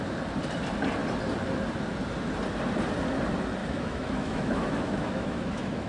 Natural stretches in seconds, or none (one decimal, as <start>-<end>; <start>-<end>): 0.0-3.6

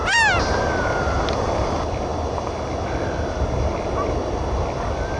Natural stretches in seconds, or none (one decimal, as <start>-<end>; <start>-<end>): 0.0-5.2

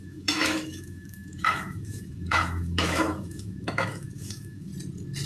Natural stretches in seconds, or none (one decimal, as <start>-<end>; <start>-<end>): 4.7-5.3